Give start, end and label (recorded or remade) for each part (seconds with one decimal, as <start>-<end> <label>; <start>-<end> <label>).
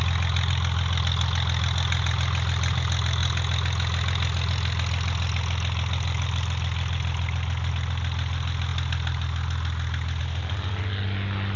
0.0-11.6 recorded